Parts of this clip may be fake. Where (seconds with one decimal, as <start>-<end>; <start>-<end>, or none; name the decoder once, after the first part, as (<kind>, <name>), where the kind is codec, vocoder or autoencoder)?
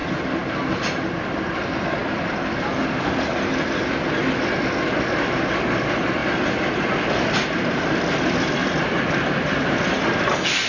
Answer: none